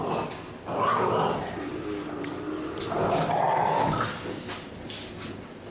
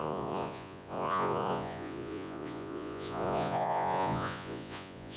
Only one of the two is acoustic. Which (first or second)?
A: first